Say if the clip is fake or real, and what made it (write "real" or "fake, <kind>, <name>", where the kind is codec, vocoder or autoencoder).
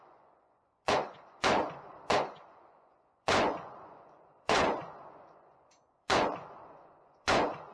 fake, vocoder, Vocos